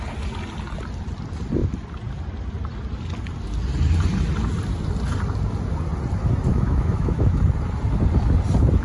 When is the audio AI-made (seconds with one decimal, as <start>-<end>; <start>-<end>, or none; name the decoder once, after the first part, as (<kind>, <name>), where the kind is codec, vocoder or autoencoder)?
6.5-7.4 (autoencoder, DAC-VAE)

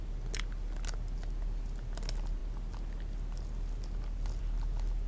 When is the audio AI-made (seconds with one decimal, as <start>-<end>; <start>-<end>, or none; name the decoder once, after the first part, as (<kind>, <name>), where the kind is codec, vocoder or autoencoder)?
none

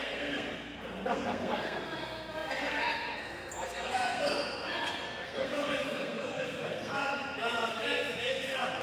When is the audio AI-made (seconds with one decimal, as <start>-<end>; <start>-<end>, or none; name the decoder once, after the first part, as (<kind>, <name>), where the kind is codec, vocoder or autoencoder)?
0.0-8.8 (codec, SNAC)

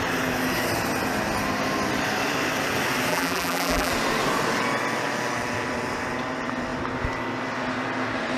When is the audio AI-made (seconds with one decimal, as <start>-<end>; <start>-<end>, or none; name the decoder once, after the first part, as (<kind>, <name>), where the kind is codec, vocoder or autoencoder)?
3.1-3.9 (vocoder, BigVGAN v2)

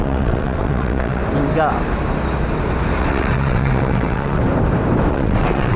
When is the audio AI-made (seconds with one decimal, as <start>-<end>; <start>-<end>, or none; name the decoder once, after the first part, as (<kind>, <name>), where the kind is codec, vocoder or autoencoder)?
0.0-1.2 (vocoder, WaveNeXt); 3.0-4.4; 5.1-5.8